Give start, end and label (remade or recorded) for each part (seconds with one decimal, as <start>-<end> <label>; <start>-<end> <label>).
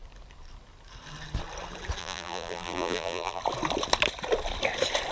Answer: 0.0-2.0 recorded; 2.0-3.4 remade; 3.4-5.1 recorded